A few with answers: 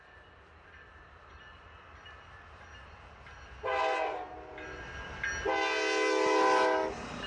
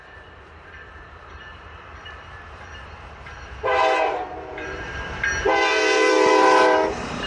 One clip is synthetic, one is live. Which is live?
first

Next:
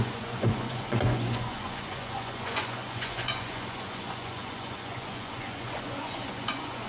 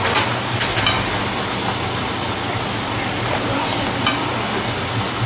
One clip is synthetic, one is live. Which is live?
second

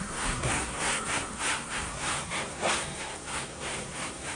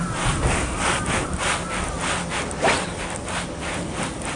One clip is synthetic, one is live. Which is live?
second